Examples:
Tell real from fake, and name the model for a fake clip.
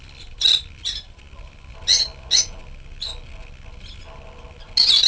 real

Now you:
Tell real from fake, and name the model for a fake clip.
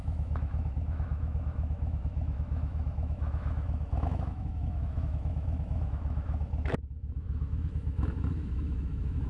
fake, autoencoder, DAC-VAE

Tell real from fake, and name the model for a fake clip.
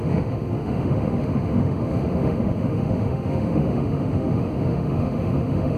fake, autoencoder, DAC-VAE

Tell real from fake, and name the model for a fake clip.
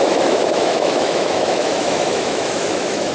fake, autoencoder, DAC-VAE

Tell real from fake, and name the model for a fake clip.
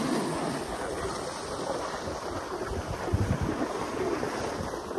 real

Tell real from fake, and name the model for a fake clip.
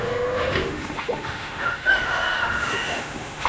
fake, autoencoder, DAC-VAE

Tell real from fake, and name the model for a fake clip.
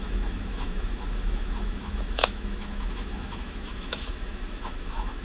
fake, autoencoder, DAC-VAE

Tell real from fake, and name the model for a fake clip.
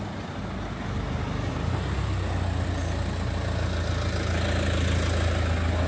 real